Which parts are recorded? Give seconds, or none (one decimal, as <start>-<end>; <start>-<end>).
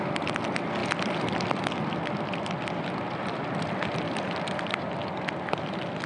0.0-6.1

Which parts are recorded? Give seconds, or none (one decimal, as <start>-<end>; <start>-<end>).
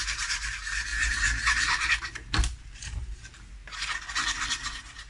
3.1-5.1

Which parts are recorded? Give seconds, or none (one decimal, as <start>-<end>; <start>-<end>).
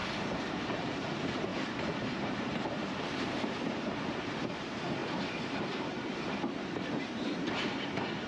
0.0-0.5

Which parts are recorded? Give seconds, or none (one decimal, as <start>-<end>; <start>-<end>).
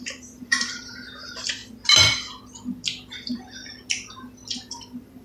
1.6-4.5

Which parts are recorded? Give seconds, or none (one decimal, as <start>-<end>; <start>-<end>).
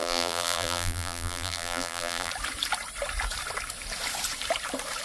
2.3-5.0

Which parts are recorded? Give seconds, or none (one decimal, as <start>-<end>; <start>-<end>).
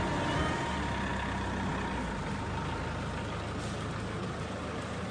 0.0-5.1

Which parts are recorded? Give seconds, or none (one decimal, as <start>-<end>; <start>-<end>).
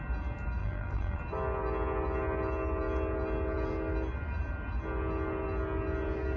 0.0-0.6; 1.2-6.4